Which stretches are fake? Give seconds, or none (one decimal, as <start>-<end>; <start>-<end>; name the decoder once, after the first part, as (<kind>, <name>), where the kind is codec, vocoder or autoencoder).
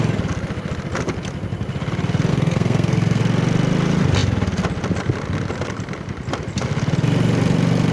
2.3-3.2 (codec, SNAC)